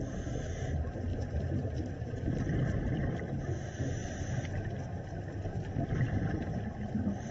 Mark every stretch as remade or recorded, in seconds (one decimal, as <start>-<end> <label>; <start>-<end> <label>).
0.0-5.5 recorded; 5.5-6.1 remade; 6.1-7.3 recorded